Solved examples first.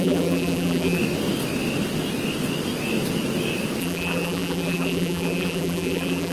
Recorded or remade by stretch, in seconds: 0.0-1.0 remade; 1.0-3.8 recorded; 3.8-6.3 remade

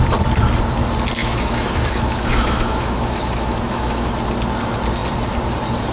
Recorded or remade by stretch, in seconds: 0.0-1.2 recorded; 1.2-4.1 remade; 4.1-5.9 recorded

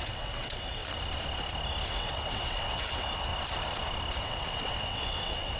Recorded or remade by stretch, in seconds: 0.0-0.8 remade; 0.8-1.9 recorded; 1.9-3.3 remade; 3.3-4.2 recorded; 4.2-5.6 remade

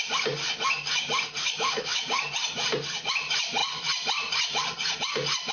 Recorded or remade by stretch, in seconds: 0.0-1.4 recorded; 1.4-2.2 remade; 2.2-5.5 recorded